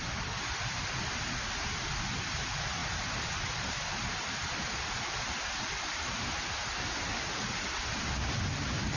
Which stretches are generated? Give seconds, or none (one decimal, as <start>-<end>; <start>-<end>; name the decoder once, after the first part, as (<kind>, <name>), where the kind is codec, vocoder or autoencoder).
none